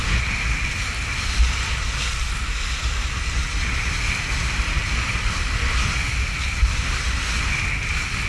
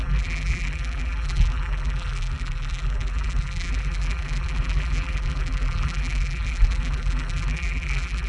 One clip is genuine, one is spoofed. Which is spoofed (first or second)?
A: second